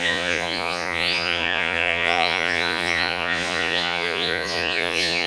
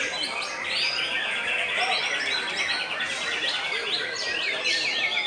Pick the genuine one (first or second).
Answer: second